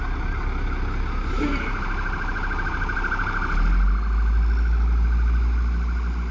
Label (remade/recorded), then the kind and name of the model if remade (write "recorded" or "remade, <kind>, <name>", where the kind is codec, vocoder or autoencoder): recorded